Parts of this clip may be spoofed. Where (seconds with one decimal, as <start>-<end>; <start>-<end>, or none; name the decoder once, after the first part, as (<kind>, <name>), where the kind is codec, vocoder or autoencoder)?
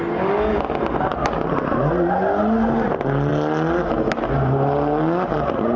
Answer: none